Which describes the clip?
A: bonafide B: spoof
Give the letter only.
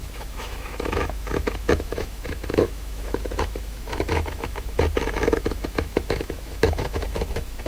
B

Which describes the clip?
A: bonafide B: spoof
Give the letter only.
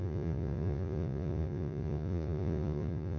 B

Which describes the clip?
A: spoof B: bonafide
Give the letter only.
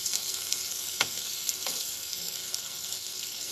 A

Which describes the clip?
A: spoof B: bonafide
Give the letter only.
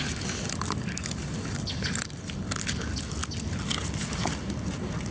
B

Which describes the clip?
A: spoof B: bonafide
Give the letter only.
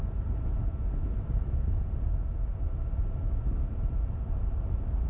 B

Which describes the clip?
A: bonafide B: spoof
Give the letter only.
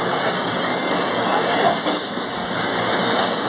B